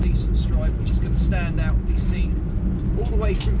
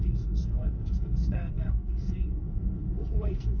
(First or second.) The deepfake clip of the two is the second